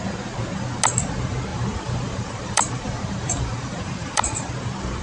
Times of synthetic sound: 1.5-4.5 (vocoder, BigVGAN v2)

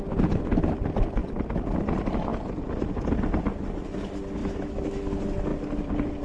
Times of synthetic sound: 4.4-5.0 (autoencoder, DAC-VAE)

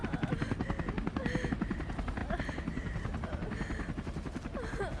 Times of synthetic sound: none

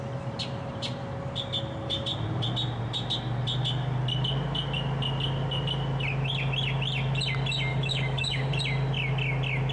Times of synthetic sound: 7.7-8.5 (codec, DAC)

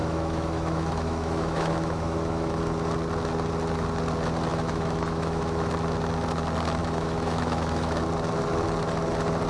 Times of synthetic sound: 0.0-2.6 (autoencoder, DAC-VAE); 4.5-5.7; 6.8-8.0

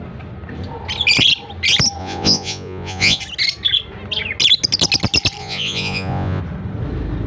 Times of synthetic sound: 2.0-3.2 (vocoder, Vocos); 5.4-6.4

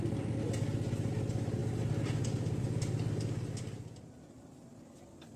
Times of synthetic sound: none

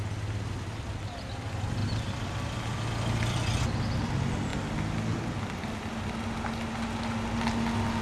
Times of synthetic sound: none